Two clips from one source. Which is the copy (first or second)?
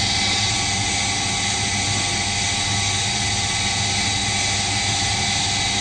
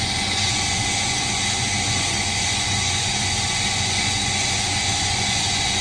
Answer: second